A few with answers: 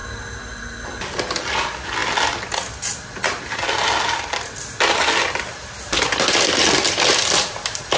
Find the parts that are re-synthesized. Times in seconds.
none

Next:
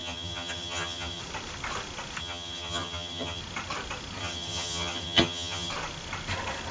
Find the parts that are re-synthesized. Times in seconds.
0.0-1.2 (vocoder, HiFi-GAN); 2.2-3.4; 4.2-5.7

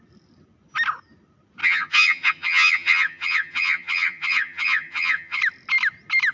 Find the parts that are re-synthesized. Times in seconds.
1.6-5.4 (vocoder, HiFi-GAN)